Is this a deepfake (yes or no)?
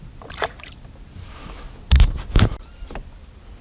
no